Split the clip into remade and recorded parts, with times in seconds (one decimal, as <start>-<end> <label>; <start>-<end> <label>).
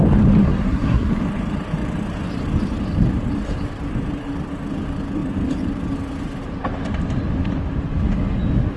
0.0-0.4 recorded; 0.4-1.2 remade; 1.2-8.8 recorded